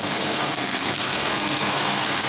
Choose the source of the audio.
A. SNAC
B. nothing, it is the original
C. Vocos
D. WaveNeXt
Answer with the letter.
A